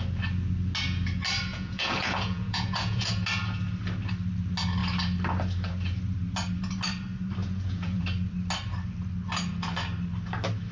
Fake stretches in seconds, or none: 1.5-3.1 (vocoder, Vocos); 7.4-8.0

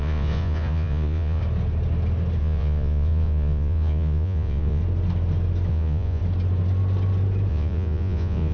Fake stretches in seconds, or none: 0.0-1.4 (vocoder, Vocos); 2.4-4.8; 5.7-6.2; 7.5-8.5

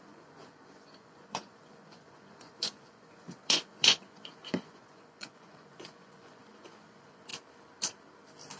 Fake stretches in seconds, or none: 0.0-7.3 (vocoder, Vocos)

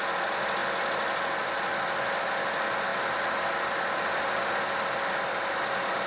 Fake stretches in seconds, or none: none